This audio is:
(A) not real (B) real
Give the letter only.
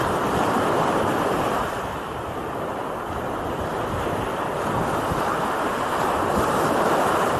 A